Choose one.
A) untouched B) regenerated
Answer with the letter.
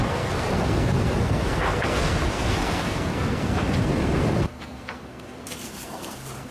B